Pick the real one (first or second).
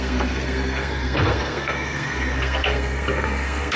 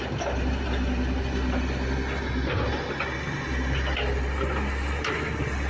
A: second